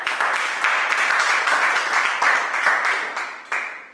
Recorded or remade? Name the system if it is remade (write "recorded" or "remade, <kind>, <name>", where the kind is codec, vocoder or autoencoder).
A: recorded